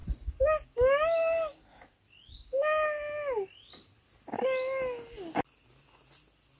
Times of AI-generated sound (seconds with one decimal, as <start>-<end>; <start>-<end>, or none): none